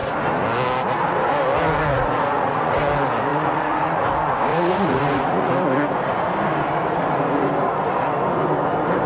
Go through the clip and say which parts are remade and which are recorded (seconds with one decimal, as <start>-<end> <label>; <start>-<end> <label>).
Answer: 0.0-1.9 recorded; 1.9-2.8 remade; 2.8-3.3 recorded; 3.3-4.1 remade; 4.1-4.5 recorded; 4.5-5.5 remade; 5.5-9.1 recorded